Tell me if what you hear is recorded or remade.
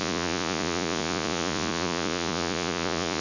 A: remade